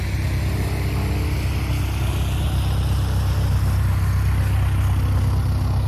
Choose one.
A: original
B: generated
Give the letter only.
A